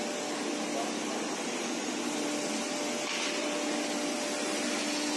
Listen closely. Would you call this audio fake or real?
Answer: real